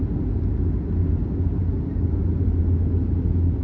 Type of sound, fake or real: real